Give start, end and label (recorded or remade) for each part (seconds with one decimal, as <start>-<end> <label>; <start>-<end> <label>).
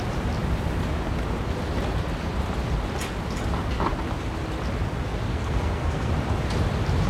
0.0-5.3 recorded; 5.3-6.1 remade; 6.1-7.1 recorded